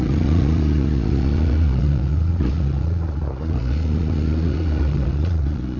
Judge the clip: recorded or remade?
remade